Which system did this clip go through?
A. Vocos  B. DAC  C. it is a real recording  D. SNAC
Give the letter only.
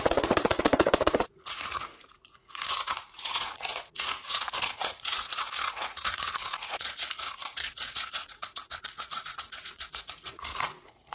A